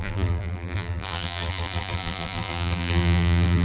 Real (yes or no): no